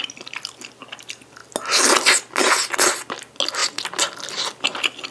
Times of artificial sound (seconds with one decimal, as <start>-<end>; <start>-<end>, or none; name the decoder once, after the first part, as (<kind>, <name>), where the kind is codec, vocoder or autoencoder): none